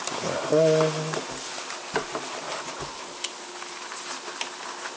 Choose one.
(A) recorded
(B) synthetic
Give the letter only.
A